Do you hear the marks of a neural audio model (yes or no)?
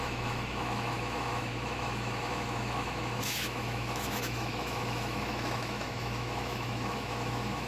yes